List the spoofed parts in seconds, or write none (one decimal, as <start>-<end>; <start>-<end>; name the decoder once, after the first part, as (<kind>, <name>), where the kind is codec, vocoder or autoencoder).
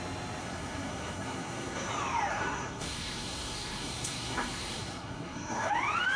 0.4-1.9 (codec, SNAC); 2.3-5.7